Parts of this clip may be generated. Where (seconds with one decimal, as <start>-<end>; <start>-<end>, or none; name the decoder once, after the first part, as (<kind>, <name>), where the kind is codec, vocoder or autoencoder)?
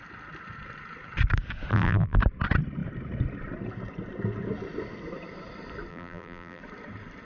1.7-2.2 (vocoder, BigVGAN v2); 5.9-6.6